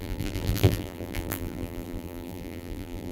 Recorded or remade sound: remade